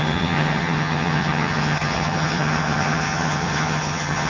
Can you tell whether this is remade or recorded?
remade